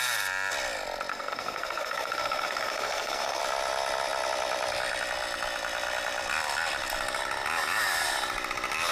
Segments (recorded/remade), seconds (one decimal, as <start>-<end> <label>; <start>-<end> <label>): 0.0-1.1 recorded; 1.1-3.4 remade; 3.4-8.9 recorded